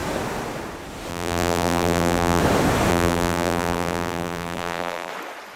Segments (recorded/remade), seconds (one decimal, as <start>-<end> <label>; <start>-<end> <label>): 0.0-1.1 recorded; 1.1-2.4 remade; 2.4-2.9 recorded; 2.9-5.1 remade; 5.1-5.6 recorded